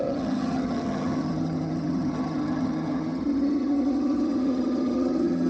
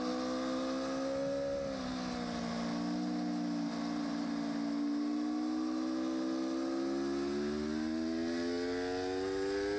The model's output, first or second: first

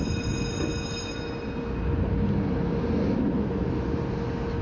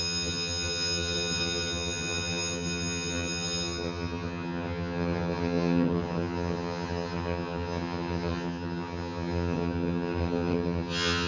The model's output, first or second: second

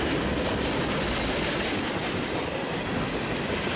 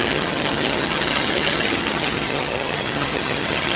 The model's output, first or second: second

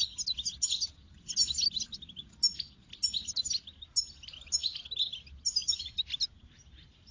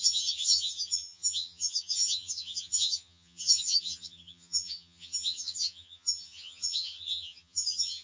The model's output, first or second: second